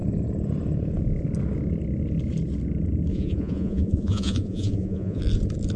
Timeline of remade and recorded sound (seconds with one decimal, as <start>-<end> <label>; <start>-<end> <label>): 0.0-3.1 recorded; 3.1-5.2 remade; 5.2-5.8 recorded